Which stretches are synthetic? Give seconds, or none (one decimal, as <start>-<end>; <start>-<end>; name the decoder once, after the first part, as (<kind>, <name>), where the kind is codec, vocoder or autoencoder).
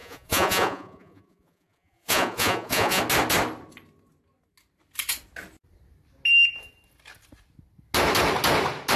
0.0-3.0 (vocoder, Vocos)